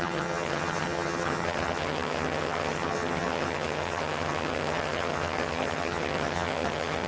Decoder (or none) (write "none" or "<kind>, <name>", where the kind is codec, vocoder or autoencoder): vocoder, HiFi-GAN